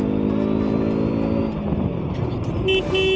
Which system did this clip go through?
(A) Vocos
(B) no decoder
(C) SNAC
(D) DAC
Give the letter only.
B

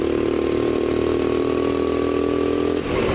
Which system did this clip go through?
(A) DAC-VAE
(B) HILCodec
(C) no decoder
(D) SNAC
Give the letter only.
C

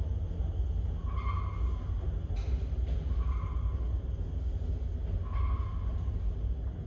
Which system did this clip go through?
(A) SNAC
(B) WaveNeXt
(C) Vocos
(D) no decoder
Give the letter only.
D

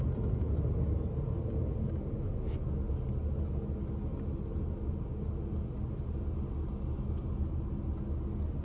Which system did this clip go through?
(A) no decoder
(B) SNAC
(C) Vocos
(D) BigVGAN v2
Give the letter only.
A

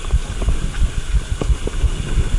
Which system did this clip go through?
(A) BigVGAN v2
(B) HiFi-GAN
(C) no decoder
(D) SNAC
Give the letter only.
C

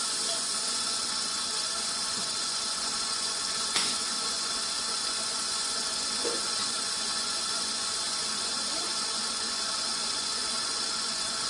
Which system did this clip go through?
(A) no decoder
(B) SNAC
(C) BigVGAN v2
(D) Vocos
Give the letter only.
D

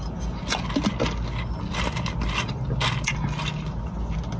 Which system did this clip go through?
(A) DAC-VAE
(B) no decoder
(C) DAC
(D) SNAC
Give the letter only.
B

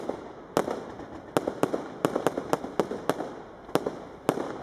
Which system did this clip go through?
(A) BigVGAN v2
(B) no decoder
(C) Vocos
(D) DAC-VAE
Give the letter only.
B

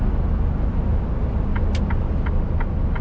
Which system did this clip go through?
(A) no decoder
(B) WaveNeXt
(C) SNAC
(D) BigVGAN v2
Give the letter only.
A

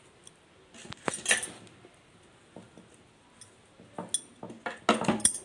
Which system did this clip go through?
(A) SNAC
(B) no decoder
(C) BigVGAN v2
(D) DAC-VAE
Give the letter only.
B